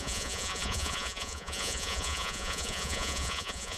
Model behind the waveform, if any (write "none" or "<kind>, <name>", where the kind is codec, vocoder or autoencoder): vocoder, Vocos